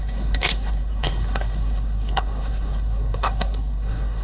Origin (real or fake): fake